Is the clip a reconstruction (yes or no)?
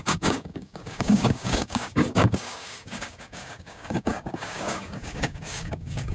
yes